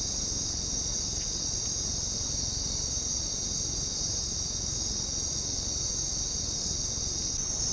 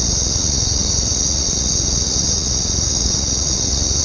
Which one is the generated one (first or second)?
second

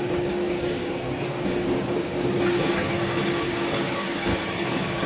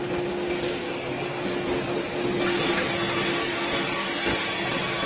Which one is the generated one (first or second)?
first